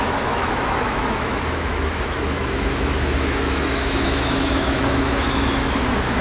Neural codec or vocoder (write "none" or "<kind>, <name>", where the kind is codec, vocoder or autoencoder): autoencoder, DAC-VAE